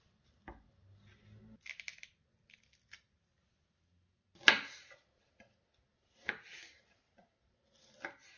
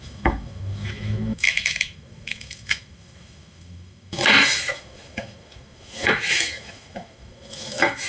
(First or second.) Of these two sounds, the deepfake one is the second